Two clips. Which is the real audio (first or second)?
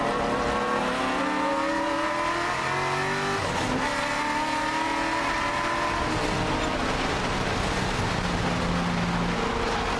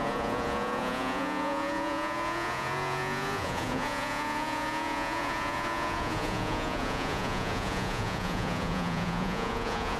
first